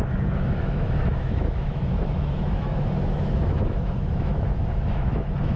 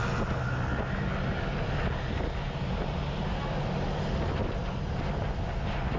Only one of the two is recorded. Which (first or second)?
second